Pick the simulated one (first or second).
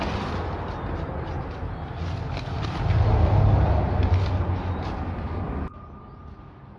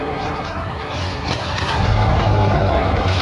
second